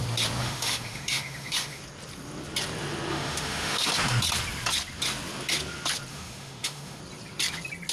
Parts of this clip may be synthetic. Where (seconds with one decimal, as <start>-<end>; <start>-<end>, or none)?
0.4-1.8; 3.1-3.9; 6.1-7.0